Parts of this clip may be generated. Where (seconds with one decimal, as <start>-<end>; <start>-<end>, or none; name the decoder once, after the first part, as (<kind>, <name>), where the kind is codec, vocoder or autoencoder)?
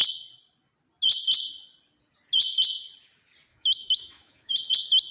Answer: 3.5-4.6 (autoencoder, DAC-VAE)